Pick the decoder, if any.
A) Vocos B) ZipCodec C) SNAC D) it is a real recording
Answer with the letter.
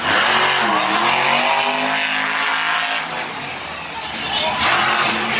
D